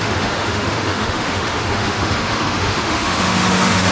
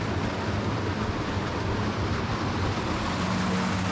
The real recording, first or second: second